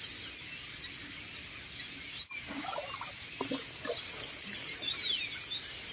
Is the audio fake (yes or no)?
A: no